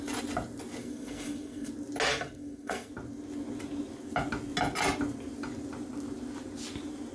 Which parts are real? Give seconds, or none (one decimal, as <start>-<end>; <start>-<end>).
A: 0.0-0.8; 1.7-2.1; 2.9-7.1